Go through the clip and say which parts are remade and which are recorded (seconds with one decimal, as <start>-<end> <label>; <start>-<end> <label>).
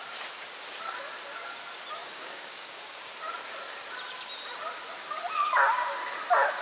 0.0-2.0 recorded; 2.0-3.1 remade; 3.1-6.6 recorded